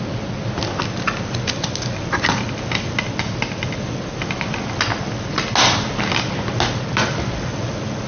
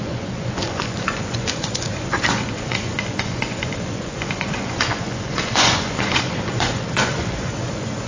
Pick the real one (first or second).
first